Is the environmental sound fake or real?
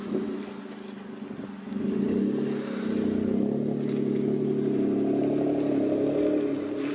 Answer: real